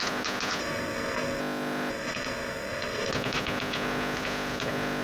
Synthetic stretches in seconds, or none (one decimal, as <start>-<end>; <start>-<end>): 0.6-1.4; 1.9-3.1